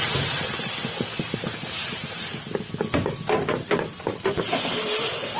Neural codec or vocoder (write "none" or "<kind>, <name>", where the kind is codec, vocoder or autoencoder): none